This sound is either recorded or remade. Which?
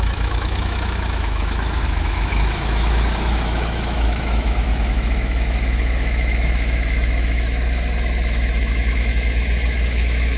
remade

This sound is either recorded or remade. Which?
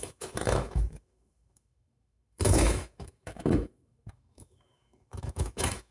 remade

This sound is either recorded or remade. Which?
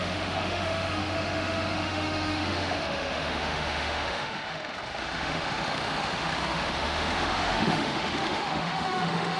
remade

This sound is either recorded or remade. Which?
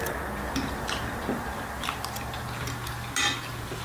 recorded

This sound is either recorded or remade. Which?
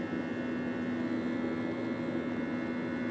recorded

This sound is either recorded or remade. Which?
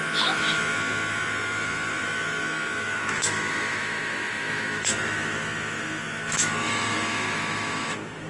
remade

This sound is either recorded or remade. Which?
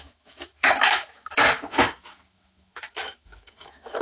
remade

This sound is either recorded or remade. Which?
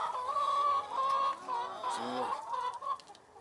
recorded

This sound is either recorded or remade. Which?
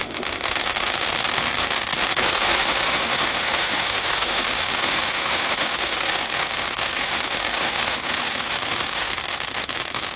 remade